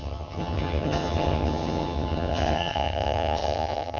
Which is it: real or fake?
fake